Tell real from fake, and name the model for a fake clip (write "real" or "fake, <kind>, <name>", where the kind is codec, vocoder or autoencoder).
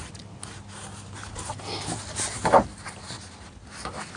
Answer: real